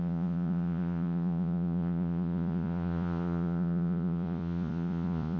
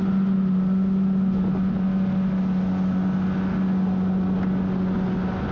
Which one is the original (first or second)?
second